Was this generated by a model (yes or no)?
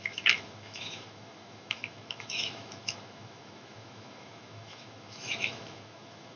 yes